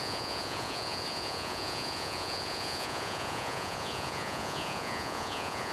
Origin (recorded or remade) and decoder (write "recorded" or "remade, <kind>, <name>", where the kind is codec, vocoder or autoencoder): remade, vocoder, Vocos